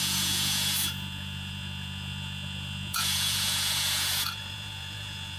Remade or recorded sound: remade